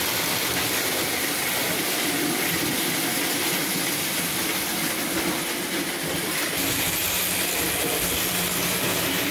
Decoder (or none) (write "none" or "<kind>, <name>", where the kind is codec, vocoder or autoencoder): none